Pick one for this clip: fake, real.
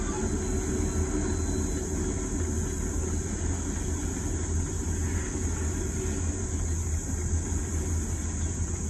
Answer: real